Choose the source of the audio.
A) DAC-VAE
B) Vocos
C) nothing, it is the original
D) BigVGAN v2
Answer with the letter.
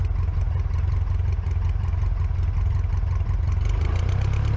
C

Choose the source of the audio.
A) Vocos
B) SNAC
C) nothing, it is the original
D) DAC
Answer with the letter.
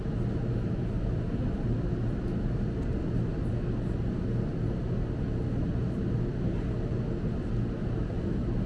C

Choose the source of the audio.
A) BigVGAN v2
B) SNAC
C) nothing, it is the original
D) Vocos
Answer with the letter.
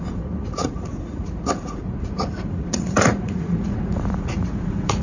D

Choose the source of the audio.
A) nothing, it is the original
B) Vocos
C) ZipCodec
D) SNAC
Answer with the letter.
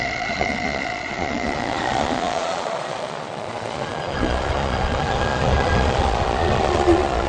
B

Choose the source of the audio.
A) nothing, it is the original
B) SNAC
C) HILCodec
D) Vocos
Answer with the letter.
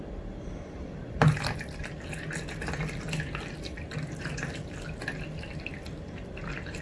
A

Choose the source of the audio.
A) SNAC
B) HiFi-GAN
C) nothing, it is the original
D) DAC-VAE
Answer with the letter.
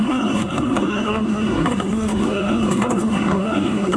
A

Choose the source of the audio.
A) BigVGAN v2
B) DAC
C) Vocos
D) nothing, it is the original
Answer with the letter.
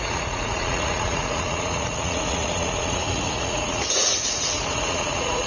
C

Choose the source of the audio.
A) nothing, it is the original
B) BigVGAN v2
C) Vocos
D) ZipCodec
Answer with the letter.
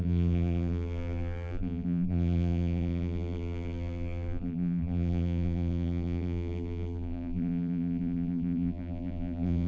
B